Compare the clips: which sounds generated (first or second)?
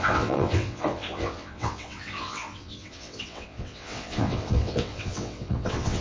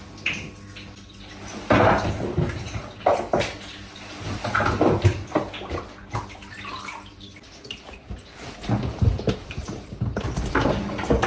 first